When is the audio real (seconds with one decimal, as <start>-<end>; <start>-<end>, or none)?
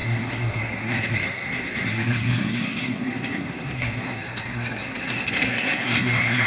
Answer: none